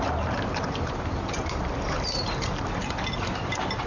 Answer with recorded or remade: remade